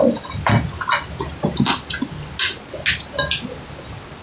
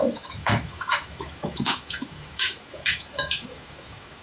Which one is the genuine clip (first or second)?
first